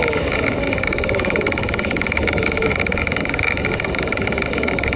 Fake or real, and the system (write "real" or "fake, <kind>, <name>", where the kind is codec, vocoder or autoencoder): fake, codec, DAC